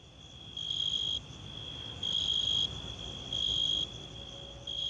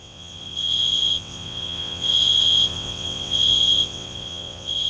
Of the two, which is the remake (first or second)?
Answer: second